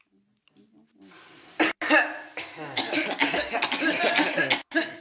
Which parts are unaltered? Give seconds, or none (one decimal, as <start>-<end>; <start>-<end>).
0.0-5.0